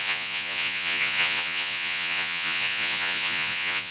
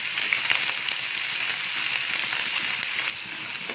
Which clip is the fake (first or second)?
first